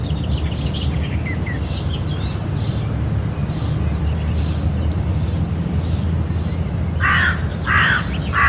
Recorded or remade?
recorded